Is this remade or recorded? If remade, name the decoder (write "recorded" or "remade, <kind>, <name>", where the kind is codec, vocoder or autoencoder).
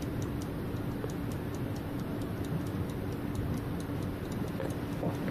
recorded